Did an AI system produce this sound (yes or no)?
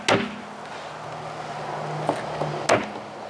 no